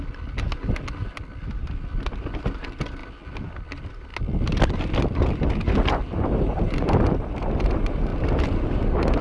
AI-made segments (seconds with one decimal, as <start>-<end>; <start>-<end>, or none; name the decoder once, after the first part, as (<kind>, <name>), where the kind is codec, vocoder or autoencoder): none